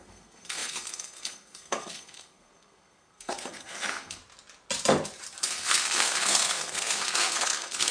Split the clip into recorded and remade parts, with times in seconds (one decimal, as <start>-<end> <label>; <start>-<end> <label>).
0.0-4.2 remade; 4.2-5.4 recorded; 5.4-7.9 remade